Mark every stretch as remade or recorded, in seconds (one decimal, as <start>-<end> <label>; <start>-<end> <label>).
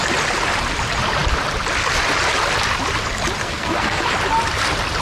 0.0-3.4 recorded; 3.4-4.0 remade; 4.0-5.0 recorded